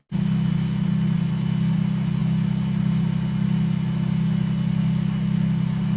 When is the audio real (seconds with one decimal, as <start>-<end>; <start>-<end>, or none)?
0.0-6.0